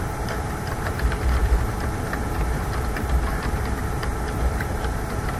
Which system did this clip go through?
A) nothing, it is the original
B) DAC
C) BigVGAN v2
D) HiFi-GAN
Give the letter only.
C